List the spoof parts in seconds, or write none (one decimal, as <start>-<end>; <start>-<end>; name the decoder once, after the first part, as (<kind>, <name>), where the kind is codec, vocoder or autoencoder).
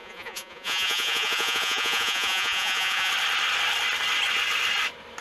0.0-3.1 (vocoder, Vocos)